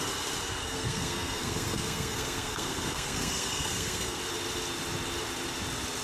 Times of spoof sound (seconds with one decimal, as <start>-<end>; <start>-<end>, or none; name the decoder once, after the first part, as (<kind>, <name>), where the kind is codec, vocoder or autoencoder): 0.6-4.2 (codec, SNAC)